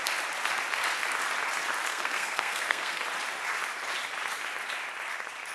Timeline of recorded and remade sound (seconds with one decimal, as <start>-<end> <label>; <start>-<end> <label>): 0.0-1.9 recorded; 1.9-3.0 remade; 3.0-5.5 recorded